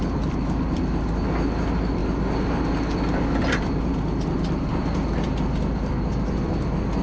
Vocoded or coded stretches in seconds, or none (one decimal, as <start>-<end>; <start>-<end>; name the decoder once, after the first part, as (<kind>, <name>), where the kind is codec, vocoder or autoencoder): none